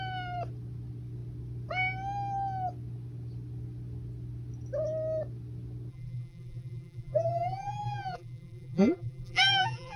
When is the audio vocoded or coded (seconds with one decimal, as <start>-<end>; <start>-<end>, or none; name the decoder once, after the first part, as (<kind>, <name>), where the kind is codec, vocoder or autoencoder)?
5.9-10.0 (vocoder, BigVGAN v2)